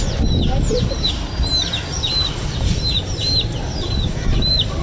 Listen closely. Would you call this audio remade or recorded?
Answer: recorded